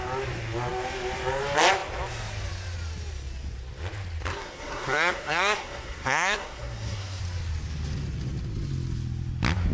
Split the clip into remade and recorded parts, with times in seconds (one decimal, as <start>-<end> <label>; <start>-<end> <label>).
0.0-4.3 recorded; 4.3-7.2 remade; 7.2-9.7 recorded